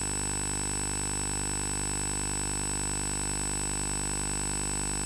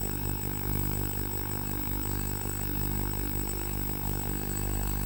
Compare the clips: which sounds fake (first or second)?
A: second